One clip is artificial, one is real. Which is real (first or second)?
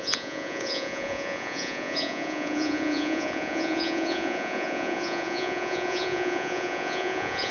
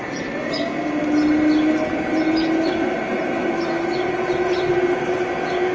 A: second